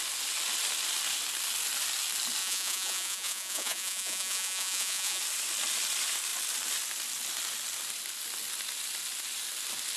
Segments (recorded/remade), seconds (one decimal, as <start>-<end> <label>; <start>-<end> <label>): 0.0-2.4 recorded; 2.4-5.2 remade; 5.2-10.0 recorded